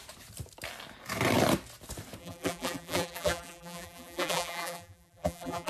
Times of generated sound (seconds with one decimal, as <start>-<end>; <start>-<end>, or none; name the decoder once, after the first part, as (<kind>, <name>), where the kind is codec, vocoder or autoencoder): 2.2-5.7 (vocoder, BigVGAN v2)